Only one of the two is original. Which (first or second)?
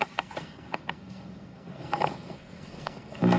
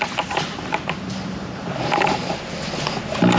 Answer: second